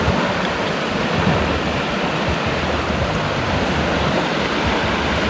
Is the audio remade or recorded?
recorded